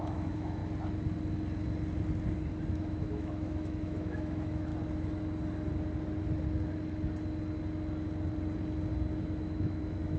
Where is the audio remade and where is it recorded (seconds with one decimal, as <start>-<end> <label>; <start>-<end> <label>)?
0.0-0.6 remade; 0.6-2.7 recorded; 2.7-4.7 remade; 4.7-9.2 recorded; 9.2-10.2 remade